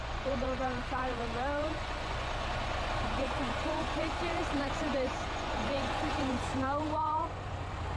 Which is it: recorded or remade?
remade